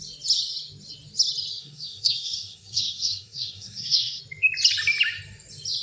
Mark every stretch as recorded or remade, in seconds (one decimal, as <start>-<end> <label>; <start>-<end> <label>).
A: 0.0-1.6 recorded; 1.6-4.2 remade; 4.2-5.8 recorded